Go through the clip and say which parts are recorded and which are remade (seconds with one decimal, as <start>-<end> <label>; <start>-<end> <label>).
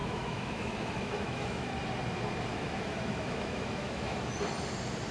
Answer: 0.0-1.7 remade; 1.7-2.5 recorded; 2.5-4.3 remade; 4.3-5.1 recorded